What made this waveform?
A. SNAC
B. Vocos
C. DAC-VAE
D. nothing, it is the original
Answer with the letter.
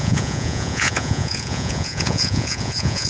B